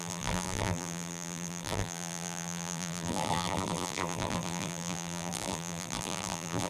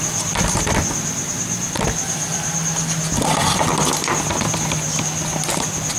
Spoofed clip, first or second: first